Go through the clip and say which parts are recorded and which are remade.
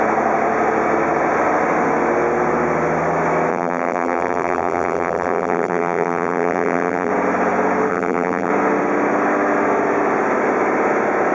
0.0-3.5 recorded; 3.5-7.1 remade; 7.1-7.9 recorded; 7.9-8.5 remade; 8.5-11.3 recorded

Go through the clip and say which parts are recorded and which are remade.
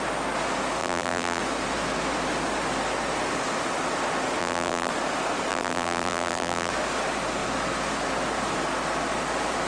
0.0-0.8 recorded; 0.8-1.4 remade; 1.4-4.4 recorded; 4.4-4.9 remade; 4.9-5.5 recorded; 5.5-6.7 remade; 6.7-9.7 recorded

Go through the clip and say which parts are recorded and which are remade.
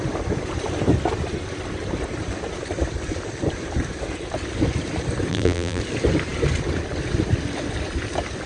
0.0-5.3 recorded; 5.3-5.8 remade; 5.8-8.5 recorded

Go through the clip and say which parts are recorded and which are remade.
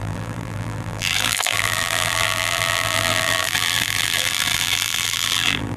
0.0-5.8 remade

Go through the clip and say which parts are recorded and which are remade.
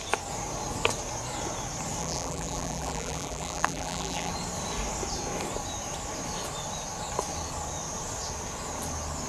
0.0-2.0 recorded; 2.0-4.3 remade; 4.3-9.3 recorded